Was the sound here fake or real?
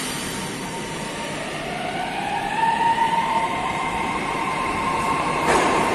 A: fake